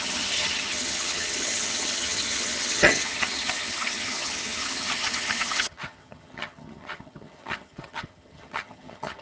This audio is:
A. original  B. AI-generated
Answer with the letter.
B